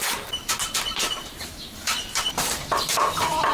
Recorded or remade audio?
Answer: remade